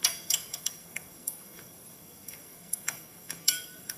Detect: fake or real fake